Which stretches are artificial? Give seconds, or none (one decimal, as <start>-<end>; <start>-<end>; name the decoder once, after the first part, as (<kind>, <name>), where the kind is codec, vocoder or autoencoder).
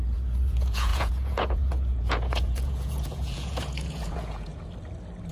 0.0-4.5 (vocoder, Vocos)